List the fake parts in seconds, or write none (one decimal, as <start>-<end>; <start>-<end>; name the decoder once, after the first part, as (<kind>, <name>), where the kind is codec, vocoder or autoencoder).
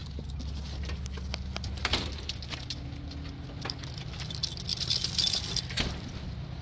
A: none